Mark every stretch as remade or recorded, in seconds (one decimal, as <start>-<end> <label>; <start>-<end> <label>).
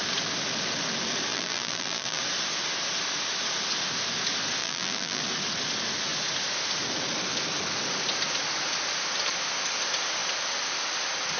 0.0-1.3 recorded; 1.3-2.2 remade; 2.2-4.6 recorded; 4.6-5.2 remade; 5.2-11.4 recorded